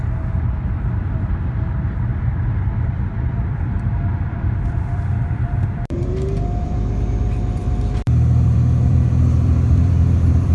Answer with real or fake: fake